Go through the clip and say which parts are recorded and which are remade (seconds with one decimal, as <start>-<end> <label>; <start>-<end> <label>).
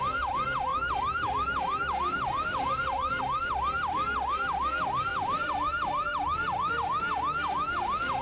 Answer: 0.0-0.7 recorded; 0.7-3.2 remade; 3.2-5.1 recorded; 5.1-6.7 remade; 6.7-8.2 recorded